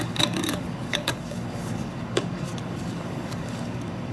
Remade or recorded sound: remade